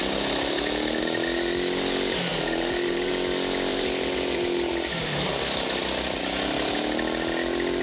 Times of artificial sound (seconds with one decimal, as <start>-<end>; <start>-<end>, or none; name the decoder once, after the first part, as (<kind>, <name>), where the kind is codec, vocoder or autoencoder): 2.3-3.1 (vocoder, BigVGAN v2); 3.7-5.3